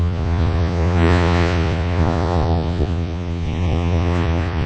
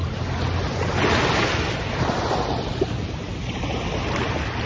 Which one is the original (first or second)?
second